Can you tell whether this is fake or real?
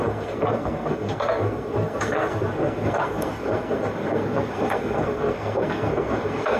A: fake